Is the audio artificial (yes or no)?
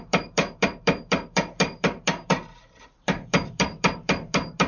yes